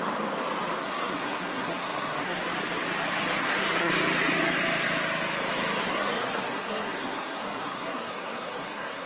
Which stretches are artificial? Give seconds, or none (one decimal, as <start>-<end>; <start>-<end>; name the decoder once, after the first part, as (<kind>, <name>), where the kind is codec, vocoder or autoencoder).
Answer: 0.8-2.4 (codec, SNAC); 3.4-3.9; 5.8-9.1